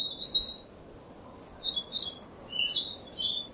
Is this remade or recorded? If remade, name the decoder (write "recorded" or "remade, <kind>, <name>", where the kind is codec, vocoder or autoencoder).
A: recorded